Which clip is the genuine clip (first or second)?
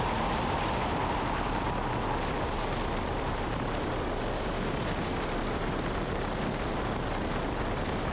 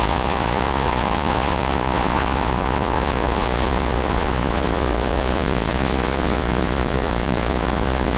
first